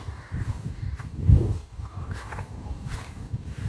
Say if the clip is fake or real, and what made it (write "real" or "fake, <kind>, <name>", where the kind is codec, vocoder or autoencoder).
fake, codec, DAC